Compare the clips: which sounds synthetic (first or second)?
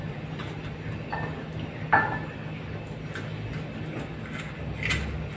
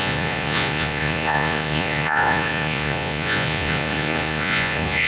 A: second